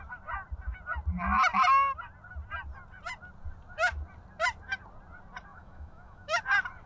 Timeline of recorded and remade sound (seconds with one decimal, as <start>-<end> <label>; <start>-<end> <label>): 0.0-5.5 recorded; 5.5-6.4 remade; 6.4-6.9 recorded